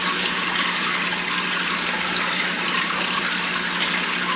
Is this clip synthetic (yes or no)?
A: no